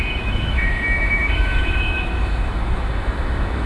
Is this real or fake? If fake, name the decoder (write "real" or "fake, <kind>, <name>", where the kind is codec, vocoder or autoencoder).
fake, autoencoder, DAC-VAE